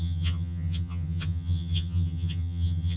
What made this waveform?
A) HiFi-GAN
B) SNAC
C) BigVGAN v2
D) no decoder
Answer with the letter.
A